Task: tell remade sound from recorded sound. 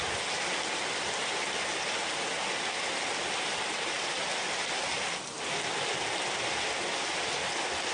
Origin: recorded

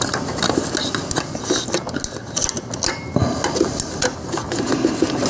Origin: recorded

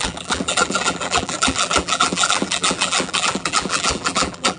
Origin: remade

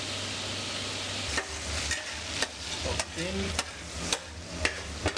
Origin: recorded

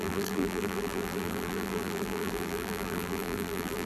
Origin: remade